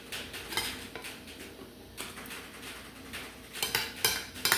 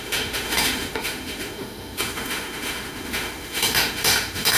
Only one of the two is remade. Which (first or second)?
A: second